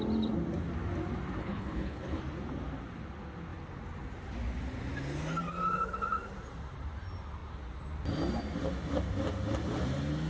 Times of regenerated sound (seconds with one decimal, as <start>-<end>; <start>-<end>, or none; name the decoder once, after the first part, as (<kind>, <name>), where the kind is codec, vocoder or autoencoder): 1.4-2.2 (codec, HILCodec)